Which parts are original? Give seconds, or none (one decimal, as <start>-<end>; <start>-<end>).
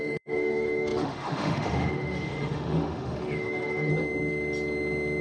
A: 3.9-5.2